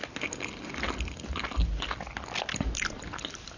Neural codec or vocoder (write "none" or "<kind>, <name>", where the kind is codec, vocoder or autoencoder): none